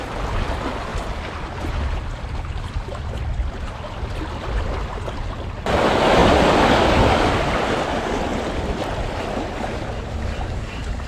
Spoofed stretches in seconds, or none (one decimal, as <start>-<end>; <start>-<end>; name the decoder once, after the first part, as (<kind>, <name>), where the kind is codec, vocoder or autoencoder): 8.3-9.0 (vocoder, BigVGAN v2)